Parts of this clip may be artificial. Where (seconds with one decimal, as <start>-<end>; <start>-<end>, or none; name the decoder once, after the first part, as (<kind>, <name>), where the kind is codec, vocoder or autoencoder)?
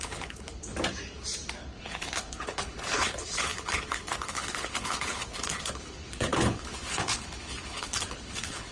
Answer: 0.0-0.7 (codec, HILCodec); 1.6-8.7